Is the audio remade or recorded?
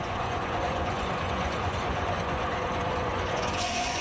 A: remade